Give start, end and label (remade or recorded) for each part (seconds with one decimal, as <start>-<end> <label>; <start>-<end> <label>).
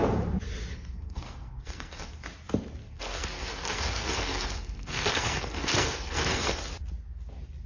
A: 0.0-0.7 recorded; 0.7-2.2 remade; 2.2-2.8 recorded; 2.8-6.6 remade; 6.6-7.7 recorded